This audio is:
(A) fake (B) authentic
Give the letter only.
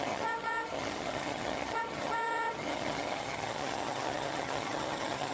A